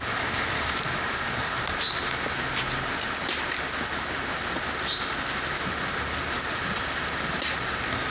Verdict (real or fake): real